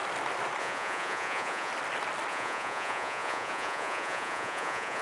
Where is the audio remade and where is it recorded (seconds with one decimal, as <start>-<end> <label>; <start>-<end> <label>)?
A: 0.0-0.6 recorded; 0.6-1.7 remade; 1.7-2.3 recorded; 2.3-5.0 remade